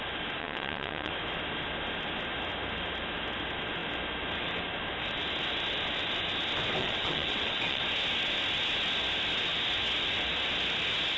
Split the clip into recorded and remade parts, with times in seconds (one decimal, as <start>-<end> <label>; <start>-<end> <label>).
0.0-0.4 recorded; 0.4-1.1 remade; 1.1-6.8 recorded; 6.8-7.8 remade; 7.8-11.2 recorded